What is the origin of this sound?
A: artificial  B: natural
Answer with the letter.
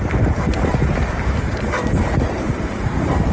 A